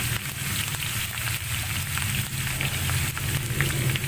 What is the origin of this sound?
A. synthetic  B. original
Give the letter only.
B